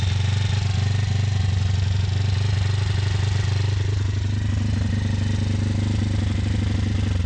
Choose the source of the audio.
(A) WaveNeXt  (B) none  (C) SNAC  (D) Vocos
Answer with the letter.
B